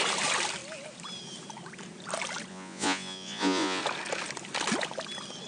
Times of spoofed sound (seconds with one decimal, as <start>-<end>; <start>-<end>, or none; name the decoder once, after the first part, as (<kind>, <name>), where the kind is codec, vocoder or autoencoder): 2.5-3.8 (vocoder, Vocos)